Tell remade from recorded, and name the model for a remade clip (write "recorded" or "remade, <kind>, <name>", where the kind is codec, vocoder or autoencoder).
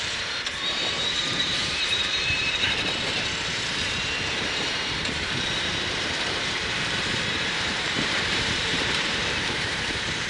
remade, vocoder, BigVGAN v2